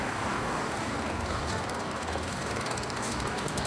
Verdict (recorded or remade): remade